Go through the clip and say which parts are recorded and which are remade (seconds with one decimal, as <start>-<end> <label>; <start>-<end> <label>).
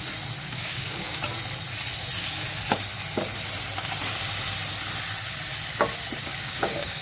0.0-0.4 recorded; 0.4-1.2 remade; 1.2-6.2 recorded; 6.2-7.0 remade